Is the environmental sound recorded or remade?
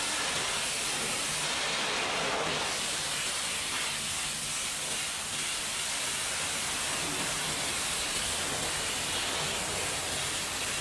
recorded